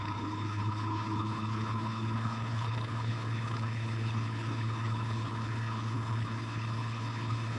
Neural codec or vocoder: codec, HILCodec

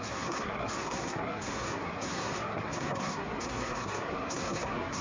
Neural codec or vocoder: codec, SNAC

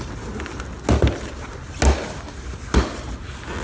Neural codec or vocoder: none